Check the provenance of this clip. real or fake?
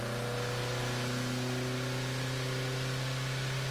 real